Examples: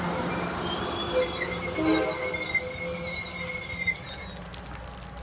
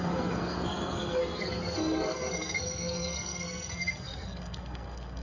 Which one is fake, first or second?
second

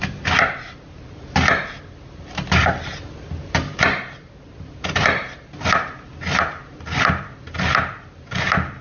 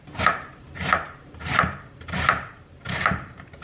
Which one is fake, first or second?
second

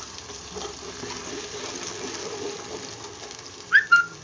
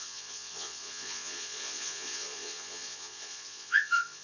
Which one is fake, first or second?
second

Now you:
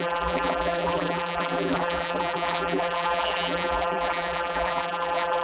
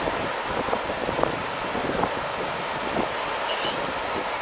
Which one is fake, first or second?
first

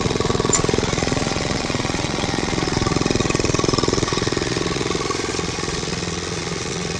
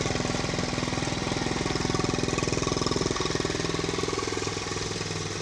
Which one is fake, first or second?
first